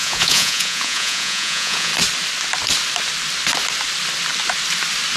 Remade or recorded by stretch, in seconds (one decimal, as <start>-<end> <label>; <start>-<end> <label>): 0.0-1.9 remade; 1.9-5.2 recorded